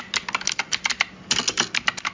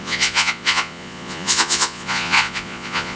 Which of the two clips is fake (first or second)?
second